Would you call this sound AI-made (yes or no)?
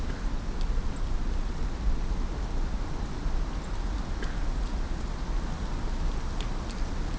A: no